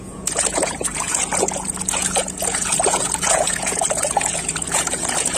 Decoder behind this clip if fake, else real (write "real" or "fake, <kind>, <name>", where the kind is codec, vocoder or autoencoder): fake, vocoder, Vocos